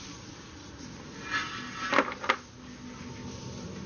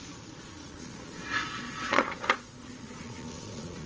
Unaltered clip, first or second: first